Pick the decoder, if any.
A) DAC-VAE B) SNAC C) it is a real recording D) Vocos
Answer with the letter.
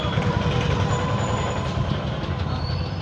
C